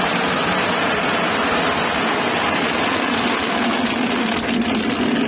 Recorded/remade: recorded